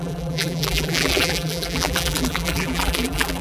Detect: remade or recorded remade